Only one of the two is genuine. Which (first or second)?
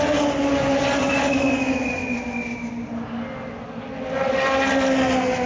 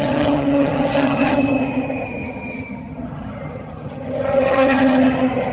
first